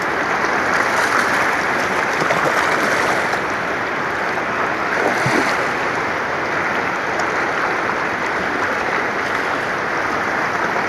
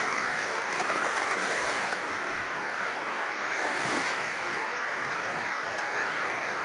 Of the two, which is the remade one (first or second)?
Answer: second